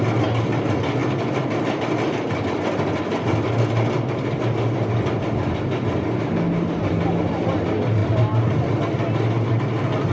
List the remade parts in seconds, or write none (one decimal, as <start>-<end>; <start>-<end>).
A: none